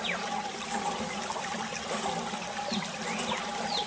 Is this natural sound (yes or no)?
yes